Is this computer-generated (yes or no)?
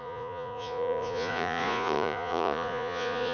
yes